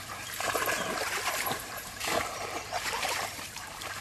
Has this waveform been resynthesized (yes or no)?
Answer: yes